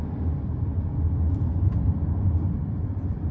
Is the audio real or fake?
real